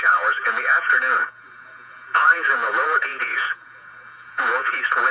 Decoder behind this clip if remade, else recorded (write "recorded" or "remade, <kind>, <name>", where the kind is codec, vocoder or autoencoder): remade, vocoder, Vocos